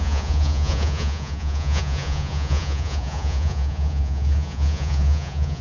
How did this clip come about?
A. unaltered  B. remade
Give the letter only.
B